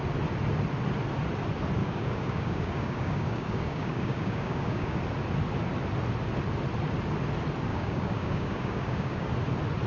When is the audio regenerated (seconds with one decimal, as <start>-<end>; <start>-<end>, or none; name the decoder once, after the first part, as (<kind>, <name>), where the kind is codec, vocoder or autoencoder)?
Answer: 1.8-5.0 (codec, DAC); 7.7-9.3